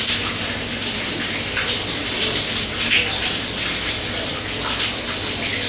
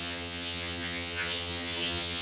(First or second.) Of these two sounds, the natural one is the first